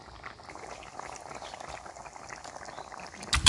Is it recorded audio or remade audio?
recorded